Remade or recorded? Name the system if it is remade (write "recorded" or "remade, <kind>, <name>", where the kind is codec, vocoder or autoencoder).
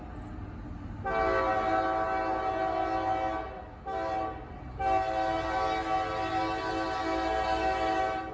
recorded